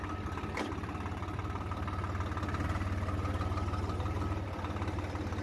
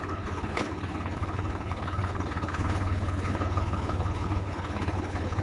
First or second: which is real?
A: first